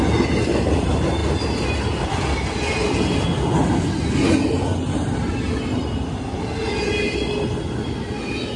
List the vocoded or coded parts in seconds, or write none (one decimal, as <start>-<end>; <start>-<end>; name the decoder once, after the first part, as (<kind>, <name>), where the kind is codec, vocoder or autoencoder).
none